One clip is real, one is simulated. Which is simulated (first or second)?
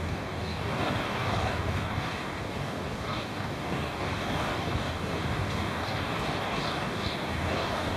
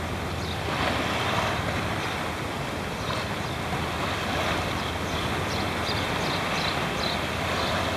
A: first